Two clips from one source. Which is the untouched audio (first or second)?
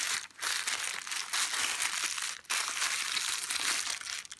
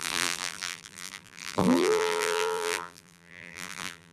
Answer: first